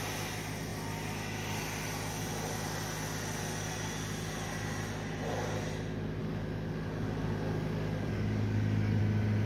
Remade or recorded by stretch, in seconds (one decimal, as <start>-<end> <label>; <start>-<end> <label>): 0.0-6.2 recorded; 6.2-9.0 remade; 9.0-9.5 recorded